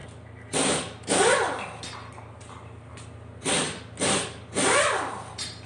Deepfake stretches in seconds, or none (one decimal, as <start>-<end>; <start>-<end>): none